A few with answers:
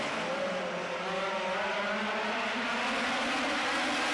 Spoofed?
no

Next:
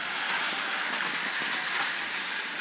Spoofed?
no